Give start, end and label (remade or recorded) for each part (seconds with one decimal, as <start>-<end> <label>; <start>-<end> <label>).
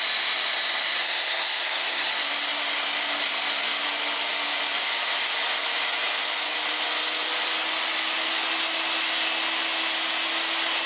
0.0-1.0 recorded; 1.0-2.1 remade; 2.1-10.9 recorded